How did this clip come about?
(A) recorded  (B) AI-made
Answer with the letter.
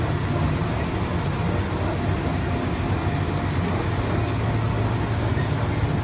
A